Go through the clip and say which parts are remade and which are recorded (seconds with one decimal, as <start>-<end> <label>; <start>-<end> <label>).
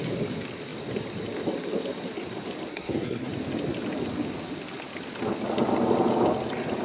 0.0-2.7 recorded; 2.7-3.3 remade; 3.3-6.8 recorded